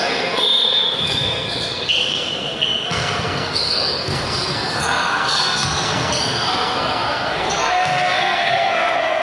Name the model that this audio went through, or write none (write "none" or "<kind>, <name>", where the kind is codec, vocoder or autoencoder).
codec, SNAC